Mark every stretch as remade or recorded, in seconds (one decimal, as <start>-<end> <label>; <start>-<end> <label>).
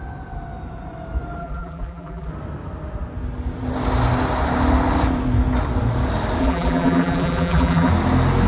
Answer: 0.0-1.4 recorded; 1.4-2.3 remade; 2.3-6.4 recorded; 6.4-7.9 remade; 7.9-8.5 recorded